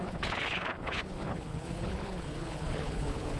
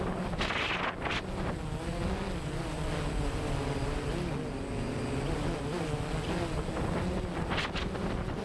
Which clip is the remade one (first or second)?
first